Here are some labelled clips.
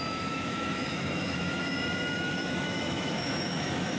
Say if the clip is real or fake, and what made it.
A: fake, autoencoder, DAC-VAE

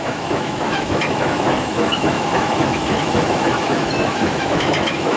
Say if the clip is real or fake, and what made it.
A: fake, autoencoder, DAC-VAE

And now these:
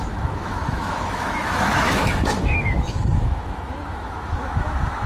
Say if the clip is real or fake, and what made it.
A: fake, autoencoder, DAC-VAE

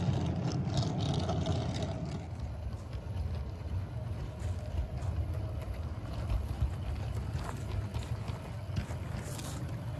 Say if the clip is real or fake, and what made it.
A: real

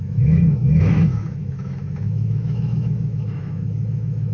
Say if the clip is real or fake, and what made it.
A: fake, autoencoder, DAC-VAE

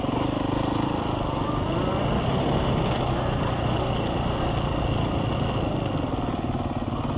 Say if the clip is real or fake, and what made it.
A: real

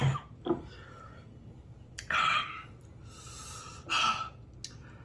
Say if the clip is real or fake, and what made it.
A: real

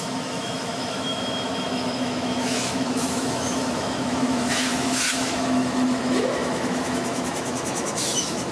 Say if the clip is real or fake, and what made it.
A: fake, autoencoder, DAC-VAE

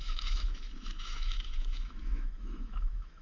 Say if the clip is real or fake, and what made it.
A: fake, autoencoder, DAC-VAE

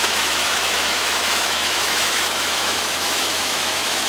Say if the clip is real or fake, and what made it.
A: fake, autoencoder, DAC-VAE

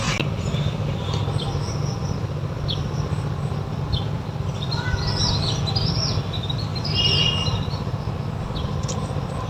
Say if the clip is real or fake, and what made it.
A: real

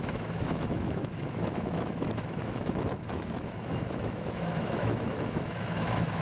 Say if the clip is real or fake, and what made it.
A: fake, autoencoder, DAC-VAE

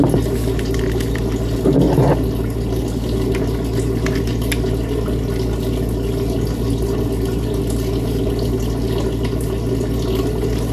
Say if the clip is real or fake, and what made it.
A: real